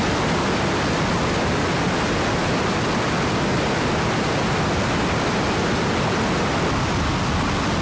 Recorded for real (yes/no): yes